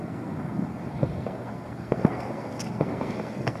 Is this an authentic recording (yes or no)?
no